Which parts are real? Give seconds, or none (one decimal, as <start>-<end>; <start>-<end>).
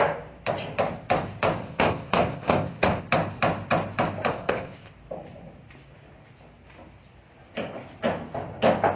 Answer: 0.0-1.6; 3.0-4.3; 4.9-9.0